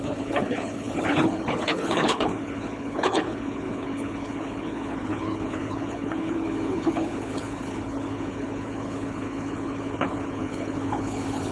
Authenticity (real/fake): fake